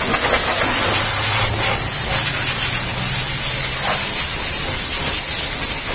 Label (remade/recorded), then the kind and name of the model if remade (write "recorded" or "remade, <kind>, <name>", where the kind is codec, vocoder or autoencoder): recorded